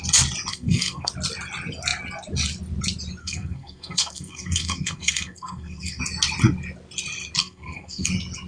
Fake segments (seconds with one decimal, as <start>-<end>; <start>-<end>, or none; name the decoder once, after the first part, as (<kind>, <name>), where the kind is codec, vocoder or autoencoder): 0.5-1.1 (codec, SNAC); 3.2-6.0; 7.4-8.1